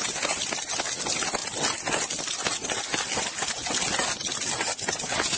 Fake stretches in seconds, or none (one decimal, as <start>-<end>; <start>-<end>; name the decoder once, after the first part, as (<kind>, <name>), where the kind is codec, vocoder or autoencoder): none